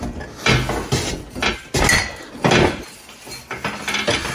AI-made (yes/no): no